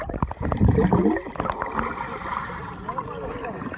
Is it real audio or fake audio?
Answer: real